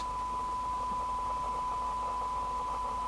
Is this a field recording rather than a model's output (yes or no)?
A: yes